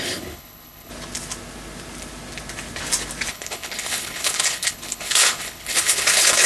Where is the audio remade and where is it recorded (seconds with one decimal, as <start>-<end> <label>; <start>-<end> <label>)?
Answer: 0.0-0.9 remade; 0.9-3.3 recorded; 3.3-6.5 remade